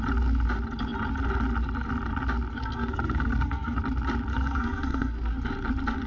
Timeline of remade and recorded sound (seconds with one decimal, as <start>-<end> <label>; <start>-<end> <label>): 0.0-2.5 recorded; 2.5-3.8 remade; 3.8-4.3 recorded; 4.3-5.3 remade; 5.3-6.1 recorded